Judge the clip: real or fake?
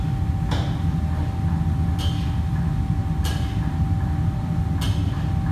real